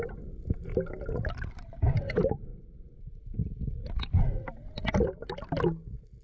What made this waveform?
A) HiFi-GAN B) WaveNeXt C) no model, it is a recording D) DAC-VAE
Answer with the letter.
C